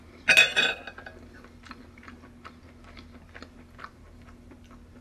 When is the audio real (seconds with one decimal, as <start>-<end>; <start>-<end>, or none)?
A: 0.0-5.0

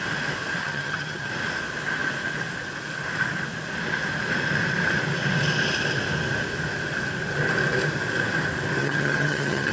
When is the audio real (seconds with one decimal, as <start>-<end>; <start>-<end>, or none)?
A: 0.0-0.6; 1.3-8.8

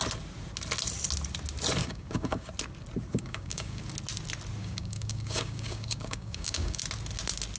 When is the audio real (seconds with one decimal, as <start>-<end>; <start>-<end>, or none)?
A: 0.0-1.8; 2.5-3.1; 3.8-4.6; 6.8-7.6